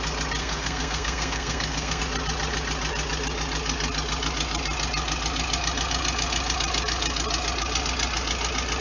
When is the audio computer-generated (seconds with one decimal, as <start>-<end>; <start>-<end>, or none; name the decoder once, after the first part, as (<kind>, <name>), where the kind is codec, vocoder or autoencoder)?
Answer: 0.4-2.0 (codec, SNAC)